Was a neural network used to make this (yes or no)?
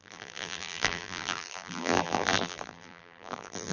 yes